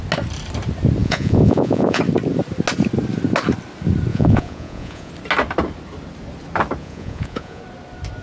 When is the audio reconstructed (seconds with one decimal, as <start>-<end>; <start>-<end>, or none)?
1.0-2.0; 4.1-5.1; 6.8-7.6